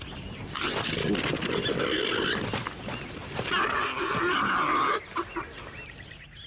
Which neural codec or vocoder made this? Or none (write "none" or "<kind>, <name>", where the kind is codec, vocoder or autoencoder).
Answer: none